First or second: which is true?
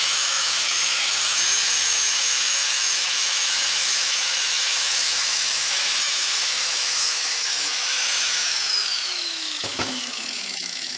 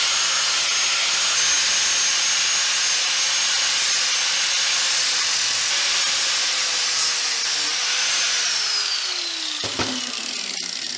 second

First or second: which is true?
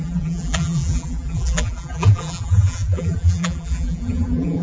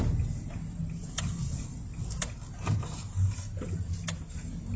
second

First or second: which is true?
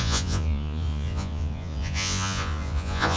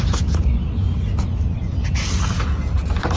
second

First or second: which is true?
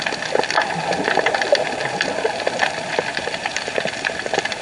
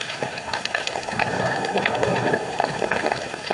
first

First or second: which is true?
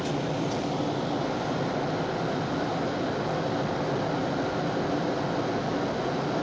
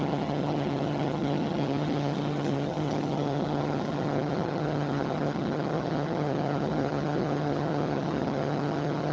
first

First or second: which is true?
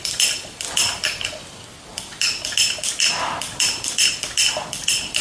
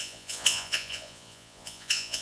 first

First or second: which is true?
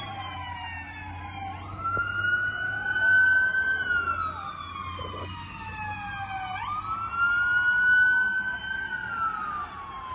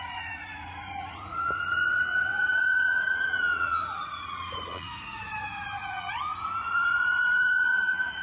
first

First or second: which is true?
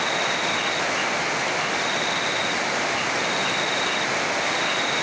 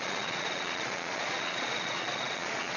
first